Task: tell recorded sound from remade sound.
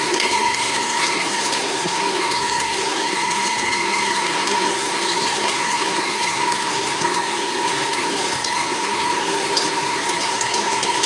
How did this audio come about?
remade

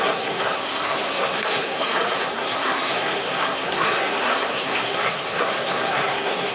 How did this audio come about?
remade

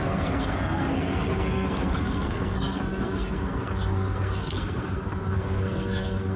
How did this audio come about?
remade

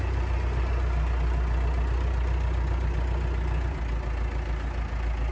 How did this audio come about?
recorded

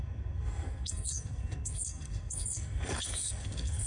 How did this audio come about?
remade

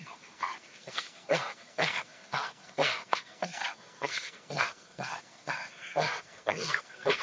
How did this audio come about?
remade